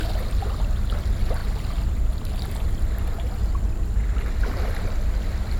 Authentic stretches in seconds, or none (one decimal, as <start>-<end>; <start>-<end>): 0.0-5.6